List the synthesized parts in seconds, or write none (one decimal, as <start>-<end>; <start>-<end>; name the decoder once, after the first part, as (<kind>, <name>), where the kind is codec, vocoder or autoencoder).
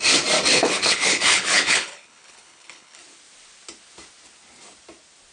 0.5-3.0 (codec, HILCodec)